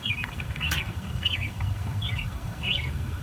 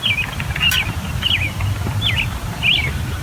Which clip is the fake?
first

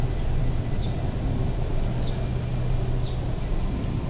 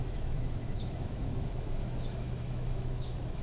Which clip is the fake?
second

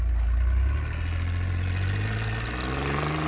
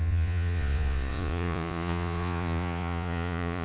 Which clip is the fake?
second